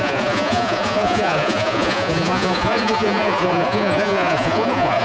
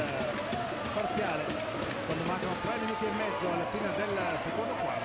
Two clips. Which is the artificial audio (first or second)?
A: first